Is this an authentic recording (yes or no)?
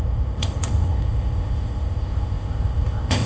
no